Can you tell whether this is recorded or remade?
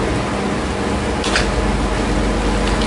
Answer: recorded